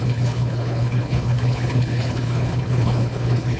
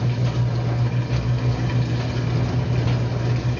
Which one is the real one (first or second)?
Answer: second